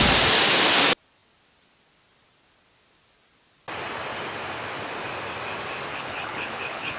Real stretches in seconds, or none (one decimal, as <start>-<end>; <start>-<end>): 0.0-5.9